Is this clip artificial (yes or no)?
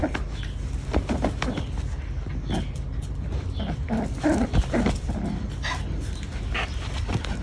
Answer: no